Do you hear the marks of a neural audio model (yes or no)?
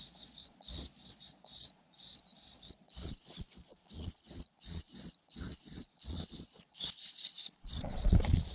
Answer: yes